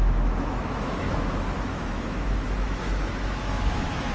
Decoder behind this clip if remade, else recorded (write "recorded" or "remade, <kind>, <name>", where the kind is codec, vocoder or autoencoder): remade, autoencoder, DAC-VAE